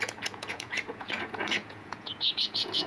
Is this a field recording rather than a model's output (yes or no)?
no